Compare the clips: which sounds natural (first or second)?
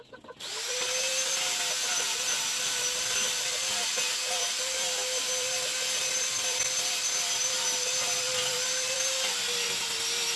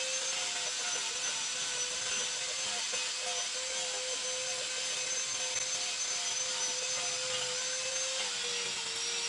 second